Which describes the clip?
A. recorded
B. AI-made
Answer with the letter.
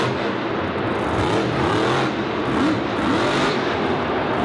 A